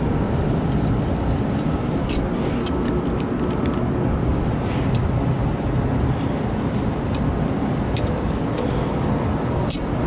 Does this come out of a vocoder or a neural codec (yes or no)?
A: no